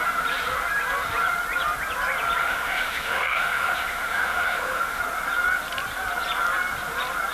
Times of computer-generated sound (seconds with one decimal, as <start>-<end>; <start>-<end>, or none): 2.4-5.0